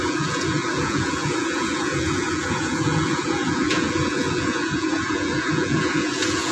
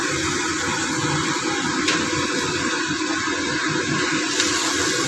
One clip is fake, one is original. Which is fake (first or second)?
first